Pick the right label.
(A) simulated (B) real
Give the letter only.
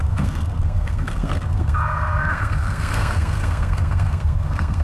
A